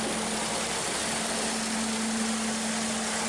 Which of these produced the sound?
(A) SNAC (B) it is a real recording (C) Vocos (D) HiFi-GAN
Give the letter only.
B